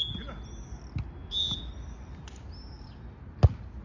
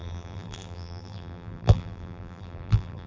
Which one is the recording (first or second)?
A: first